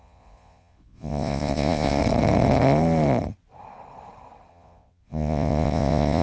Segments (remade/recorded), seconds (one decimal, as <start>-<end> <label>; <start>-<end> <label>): 0.0-2.0 remade; 2.0-4.5 recorded; 4.5-6.2 remade